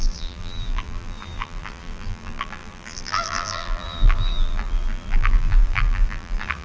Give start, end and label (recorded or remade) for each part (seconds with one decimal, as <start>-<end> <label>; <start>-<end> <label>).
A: 0.0-6.6 remade